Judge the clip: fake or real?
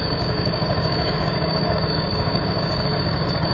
fake